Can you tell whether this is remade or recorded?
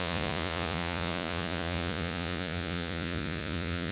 remade